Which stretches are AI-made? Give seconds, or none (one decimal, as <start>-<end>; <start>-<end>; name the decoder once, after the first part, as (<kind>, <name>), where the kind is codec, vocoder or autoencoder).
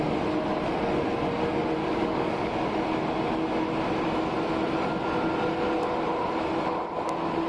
1.8-2.5 (codec, DAC)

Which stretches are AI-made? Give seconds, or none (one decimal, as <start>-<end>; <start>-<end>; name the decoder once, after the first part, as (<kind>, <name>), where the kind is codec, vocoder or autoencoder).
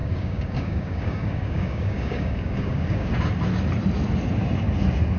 0.0-3.1 (codec, DAC)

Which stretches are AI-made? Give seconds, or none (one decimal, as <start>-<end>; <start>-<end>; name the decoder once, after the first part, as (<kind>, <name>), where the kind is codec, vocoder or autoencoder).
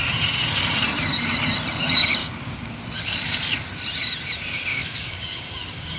2.2-2.8 (codec, DAC); 4.7-6.0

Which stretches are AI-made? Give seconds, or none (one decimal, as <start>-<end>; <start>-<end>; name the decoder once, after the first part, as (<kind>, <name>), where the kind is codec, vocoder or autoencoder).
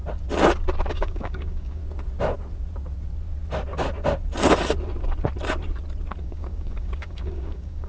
0.9-1.8 (codec, DAC); 6.2-7.9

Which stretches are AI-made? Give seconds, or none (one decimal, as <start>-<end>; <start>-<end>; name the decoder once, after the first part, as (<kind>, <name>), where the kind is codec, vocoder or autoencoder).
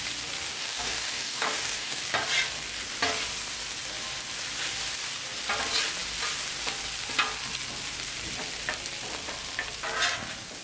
0.5-2.0 (codec, DAC)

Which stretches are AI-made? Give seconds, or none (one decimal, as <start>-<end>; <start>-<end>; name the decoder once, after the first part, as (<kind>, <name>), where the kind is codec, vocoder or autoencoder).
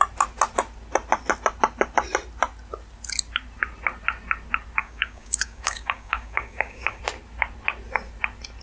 4.8-7.0 (codec, DAC)